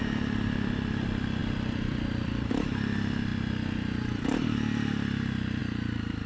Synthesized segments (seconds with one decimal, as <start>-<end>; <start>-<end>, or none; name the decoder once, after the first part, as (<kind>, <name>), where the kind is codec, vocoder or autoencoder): 0.0-3.3 (vocoder, BigVGAN v2); 3.9-5.6